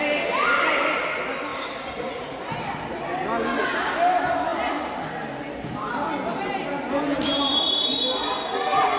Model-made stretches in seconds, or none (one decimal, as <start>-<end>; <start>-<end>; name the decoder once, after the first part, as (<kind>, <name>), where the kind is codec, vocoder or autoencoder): 1.5-2.1 (vocoder, BigVGAN v2)